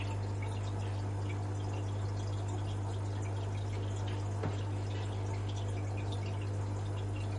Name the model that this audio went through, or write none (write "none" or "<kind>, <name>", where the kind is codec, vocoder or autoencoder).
none